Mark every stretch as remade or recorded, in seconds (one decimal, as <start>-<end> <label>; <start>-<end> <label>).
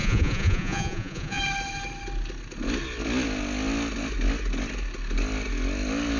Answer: 0.0-1.4 remade; 1.4-6.2 recorded